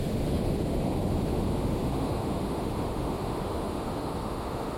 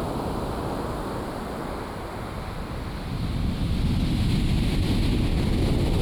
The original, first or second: second